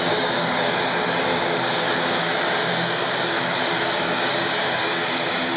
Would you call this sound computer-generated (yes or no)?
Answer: yes